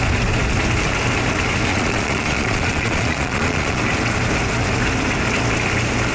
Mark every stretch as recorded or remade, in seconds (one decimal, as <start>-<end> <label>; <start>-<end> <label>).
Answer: 0.0-1.7 recorded; 1.7-3.8 remade; 3.8-6.1 recorded